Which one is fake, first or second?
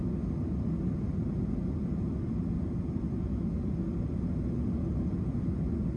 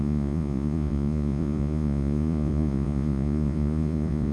second